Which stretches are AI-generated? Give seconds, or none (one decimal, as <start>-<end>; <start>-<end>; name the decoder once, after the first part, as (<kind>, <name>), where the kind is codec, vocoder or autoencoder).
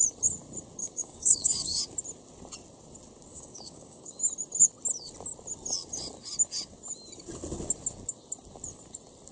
0.8-1.8 (codec, DAC); 3.3-4.2